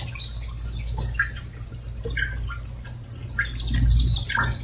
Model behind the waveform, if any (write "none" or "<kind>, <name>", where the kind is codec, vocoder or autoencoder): none